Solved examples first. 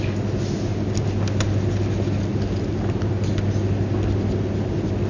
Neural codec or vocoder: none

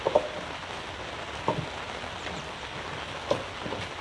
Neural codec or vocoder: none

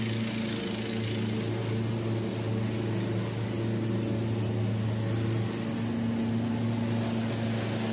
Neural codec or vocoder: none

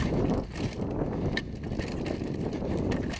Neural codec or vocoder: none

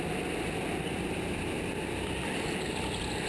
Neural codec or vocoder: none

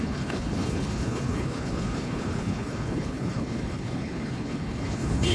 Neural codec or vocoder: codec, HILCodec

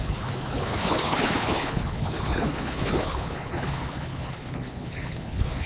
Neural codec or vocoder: codec, HILCodec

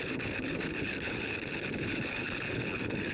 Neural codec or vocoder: codec, HILCodec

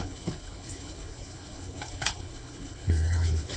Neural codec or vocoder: codec, HILCodec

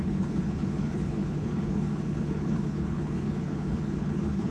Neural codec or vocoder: codec, HILCodec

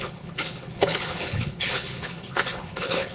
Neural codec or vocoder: codec, HILCodec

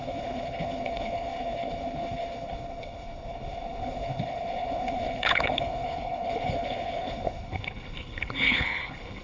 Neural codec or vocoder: codec, HILCodec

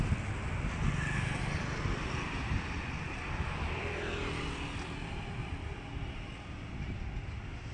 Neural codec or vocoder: none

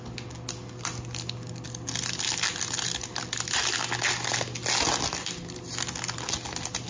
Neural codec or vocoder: none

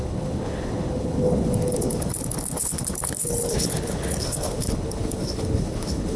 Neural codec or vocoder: codec, HILCodec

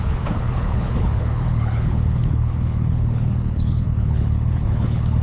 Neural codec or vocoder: codec, HILCodec